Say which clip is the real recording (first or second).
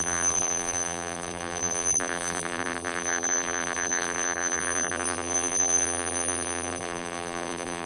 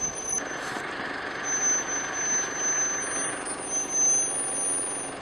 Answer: second